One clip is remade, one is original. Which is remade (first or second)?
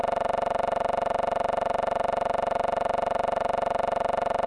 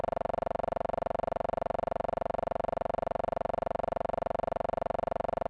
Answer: first